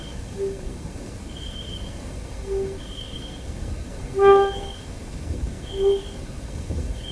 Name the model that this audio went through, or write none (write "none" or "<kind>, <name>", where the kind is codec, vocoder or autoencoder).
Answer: codec, SNAC